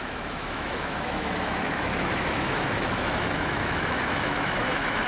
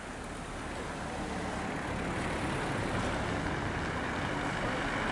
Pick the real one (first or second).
second